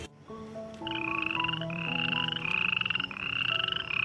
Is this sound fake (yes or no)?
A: yes